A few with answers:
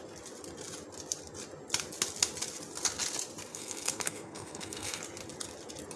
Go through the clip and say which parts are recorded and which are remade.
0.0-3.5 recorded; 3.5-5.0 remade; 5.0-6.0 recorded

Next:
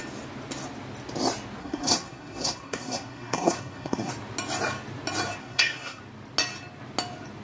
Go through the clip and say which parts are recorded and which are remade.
0.0-1.6 recorded; 1.6-4.1 remade; 4.1-5.4 recorded; 5.4-6.0 remade; 6.0-7.4 recorded

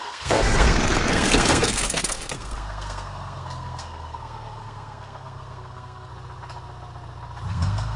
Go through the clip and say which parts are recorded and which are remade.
0.0-6.1 remade; 6.1-7.5 recorded; 7.5-8.0 remade

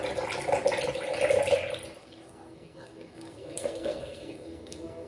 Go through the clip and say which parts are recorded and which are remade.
0.0-2.0 recorded; 2.0-5.1 remade